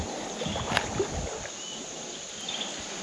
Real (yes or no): yes